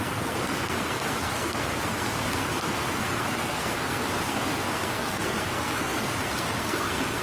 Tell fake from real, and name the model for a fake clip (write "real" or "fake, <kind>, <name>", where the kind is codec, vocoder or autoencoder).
fake, codec, SNAC